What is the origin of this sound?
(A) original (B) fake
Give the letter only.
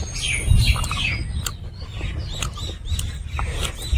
A